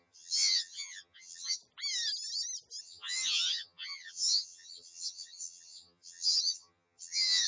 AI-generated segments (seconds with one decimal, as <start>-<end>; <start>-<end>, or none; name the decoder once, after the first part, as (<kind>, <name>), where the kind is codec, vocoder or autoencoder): 0.0-1.6 (vocoder, HiFi-GAN); 2.8-7.5